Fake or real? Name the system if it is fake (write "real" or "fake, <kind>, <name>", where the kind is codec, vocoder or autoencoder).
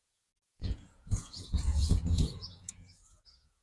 fake, vocoder, Vocos